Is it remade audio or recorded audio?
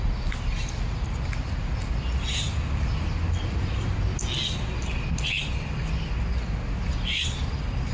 recorded